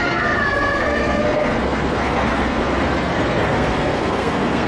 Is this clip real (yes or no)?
no